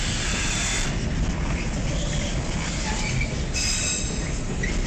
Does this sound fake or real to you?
real